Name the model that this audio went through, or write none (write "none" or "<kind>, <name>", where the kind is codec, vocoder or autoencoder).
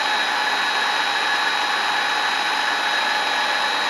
none